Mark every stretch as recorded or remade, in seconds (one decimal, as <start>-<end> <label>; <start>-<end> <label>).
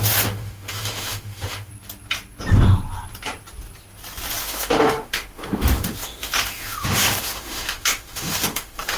0.0-1.7 remade; 1.7-4.4 recorded; 4.4-9.0 remade